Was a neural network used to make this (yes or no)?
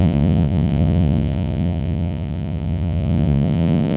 yes